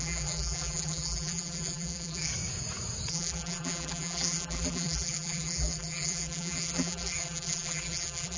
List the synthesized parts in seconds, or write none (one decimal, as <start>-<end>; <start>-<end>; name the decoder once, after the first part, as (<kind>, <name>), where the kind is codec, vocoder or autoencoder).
0.0-2.3 (vocoder, BigVGAN v2); 3.1-8.4